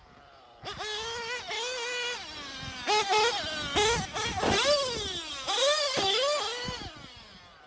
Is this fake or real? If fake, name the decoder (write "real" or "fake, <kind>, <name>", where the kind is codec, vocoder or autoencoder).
real